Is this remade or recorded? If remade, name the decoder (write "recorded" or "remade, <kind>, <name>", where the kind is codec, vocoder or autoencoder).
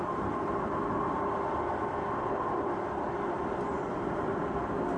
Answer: recorded